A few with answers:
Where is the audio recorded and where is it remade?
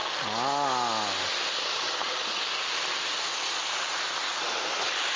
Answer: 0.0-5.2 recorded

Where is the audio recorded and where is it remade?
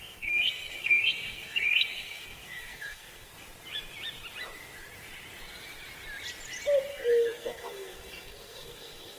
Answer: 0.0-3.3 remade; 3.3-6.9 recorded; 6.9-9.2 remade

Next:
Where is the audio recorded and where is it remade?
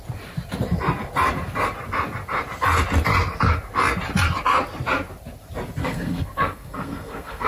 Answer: 0.0-5.8 recorded; 5.8-7.5 remade